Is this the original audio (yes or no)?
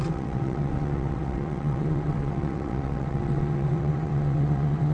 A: no